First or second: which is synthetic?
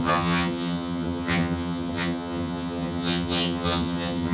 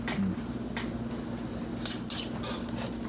first